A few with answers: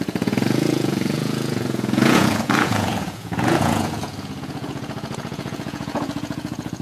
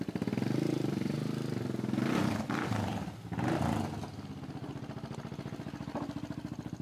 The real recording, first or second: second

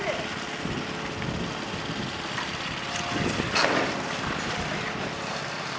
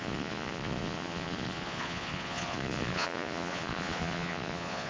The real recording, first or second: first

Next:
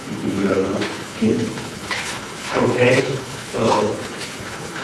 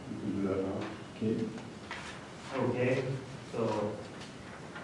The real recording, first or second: second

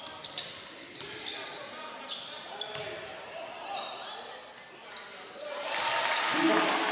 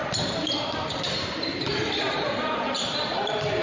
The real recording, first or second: first